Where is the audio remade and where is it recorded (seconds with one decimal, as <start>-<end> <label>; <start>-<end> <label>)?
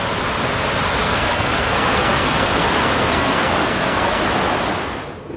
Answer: 0.0-1.0 recorded; 1.0-4.2 remade; 4.2-5.4 recorded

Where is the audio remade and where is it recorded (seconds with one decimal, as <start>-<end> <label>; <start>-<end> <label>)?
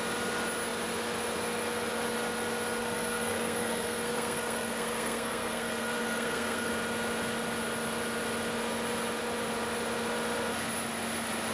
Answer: 0.0-2.8 recorded; 2.8-6.7 remade; 6.7-11.5 recorded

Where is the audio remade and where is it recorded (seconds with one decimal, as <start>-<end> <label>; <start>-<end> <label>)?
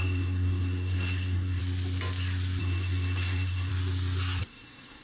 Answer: 0.0-1.6 remade; 1.6-2.6 recorded; 2.6-3.7 remade; 3.7-4.4 recorded; 4.4-5.0 remade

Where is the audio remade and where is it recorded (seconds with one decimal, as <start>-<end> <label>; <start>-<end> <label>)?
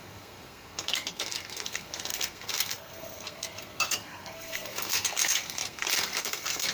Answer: 0.0-6.7 remade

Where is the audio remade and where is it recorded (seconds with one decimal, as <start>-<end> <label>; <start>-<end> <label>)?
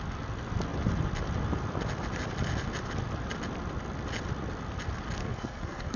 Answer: 0.0-5.2 recorded; 5.2-6.0 remade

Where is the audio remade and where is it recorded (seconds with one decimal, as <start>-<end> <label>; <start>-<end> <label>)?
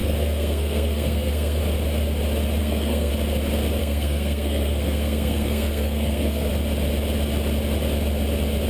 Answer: 0.0-1.6 remade; 1.6-2.6 recorded; 2.6-3.1 remade; 3.1-3.8 recorded; 3.8-6.5 remade; 6.5-8.7 recorded